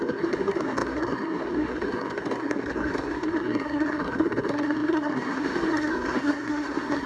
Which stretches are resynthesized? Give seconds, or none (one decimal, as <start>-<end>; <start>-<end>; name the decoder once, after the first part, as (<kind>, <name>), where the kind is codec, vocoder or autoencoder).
0.0-7.1 (codec, SNAC)